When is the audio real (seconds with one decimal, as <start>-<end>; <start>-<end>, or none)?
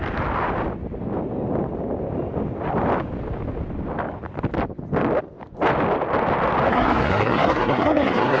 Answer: 0.0-6.7